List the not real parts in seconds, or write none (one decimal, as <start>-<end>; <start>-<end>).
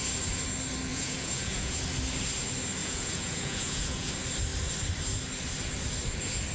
0.9-1.8; 2.8-4.1